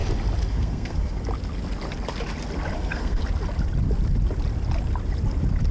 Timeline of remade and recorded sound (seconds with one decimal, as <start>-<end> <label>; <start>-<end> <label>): 0.0-0.5 recorded; 0.5-1.2 remade; 1.2-2.8 recorded; 2.8-3.2 remade; 3.2-5.7 recorded